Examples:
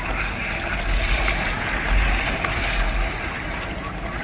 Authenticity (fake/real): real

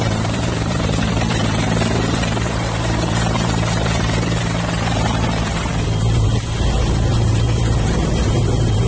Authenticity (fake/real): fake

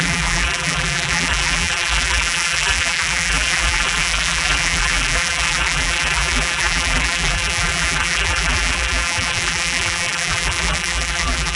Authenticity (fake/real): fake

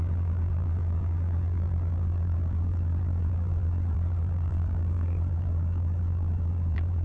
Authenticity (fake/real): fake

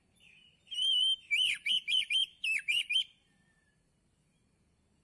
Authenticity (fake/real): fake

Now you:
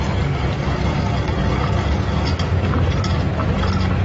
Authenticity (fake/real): real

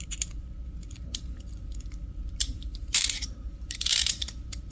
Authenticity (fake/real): fake